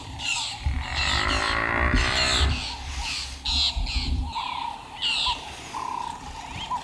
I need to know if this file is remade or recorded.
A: recorded